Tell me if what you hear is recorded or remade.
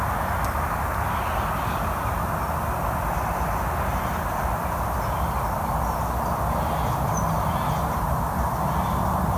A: recorded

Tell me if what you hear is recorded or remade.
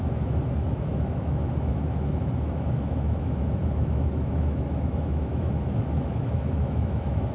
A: remade